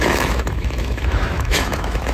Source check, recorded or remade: remade